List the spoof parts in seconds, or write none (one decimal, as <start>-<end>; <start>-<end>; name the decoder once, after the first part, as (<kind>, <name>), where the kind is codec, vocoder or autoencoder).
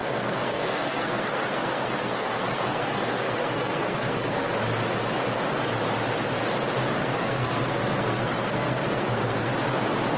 0.0-4.5 (codec, SNAC); 7.0-9.5